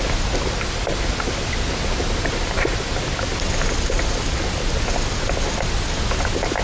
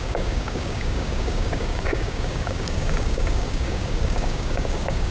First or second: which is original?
first